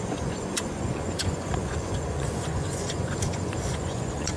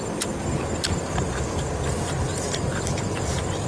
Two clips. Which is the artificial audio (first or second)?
first